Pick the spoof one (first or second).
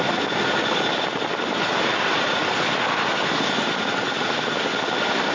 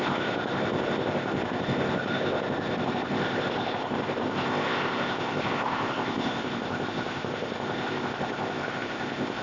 second